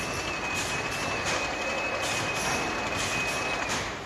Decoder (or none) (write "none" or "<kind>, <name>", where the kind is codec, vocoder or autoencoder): none